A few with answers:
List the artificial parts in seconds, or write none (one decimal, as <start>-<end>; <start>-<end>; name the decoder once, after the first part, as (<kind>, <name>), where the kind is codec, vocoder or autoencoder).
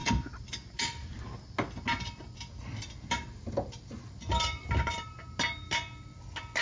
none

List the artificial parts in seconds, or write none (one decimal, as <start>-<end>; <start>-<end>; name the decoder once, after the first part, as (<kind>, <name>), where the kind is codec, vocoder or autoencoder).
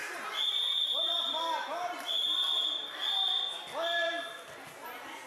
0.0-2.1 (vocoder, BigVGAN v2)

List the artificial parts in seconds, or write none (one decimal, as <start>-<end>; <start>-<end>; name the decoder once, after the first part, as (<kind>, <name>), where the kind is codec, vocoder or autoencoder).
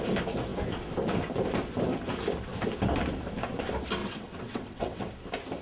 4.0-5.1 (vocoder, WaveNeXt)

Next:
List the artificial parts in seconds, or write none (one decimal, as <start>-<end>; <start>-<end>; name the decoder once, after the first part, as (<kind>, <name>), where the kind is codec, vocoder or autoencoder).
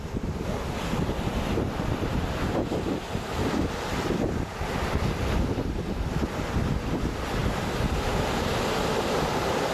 none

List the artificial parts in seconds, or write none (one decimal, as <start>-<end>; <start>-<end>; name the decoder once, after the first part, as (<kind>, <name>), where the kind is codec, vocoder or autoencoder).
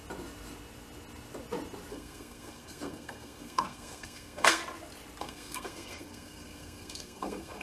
1.9-4.6 (codec, SNAC); 5.2-7.6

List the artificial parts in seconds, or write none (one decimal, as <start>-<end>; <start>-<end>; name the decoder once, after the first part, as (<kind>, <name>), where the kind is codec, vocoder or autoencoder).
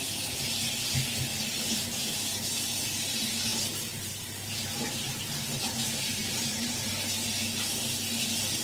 1.3-2.2 (vocoder, BigVGAN v2); 3.5-6.9